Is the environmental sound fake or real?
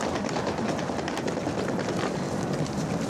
real